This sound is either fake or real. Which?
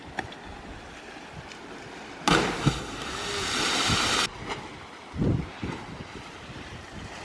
real